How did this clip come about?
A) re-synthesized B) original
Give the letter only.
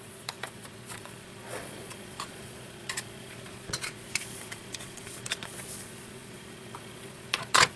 A